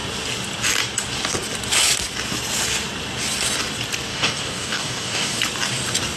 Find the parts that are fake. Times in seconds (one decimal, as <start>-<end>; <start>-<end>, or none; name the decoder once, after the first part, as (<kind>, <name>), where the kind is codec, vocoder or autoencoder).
4.1-5.4 (codec, DAC)